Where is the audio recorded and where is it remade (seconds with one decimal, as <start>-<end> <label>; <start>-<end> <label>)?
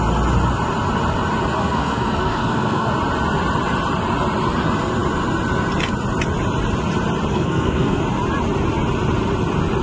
0.0-1.6 recorded; 1.6-2.9 remade; 2.9-7.3 recorded; 7.3-8.0 remade; 8.0-9.8 recorded